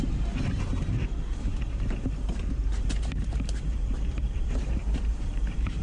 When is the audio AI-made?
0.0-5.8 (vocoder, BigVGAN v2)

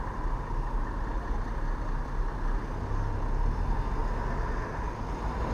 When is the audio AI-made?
none